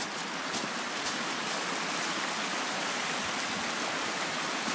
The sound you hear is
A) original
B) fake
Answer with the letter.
A